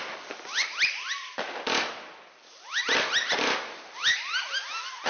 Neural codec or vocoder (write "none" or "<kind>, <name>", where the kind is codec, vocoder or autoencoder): none